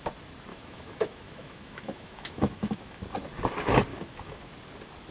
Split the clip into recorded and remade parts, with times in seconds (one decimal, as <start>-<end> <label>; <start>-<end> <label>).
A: 0.0-0.5 recorded; 0.5-3.0 remade; 3.0-3.9 recorded; 3.9-4.5 remade; 4.5-5.1 recorded